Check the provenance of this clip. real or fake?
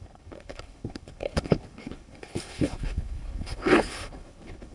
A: fake